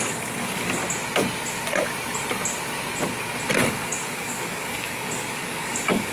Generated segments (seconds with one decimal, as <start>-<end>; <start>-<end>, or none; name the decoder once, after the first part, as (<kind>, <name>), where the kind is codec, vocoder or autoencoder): 0.0-0.8 (codec, DAC); 3.5-6.1